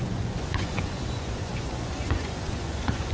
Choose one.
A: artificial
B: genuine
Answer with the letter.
A